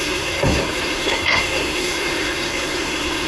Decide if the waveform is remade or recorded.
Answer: remade